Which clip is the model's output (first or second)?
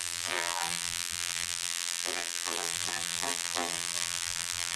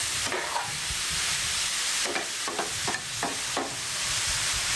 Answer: first